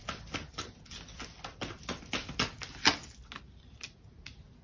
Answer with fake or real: real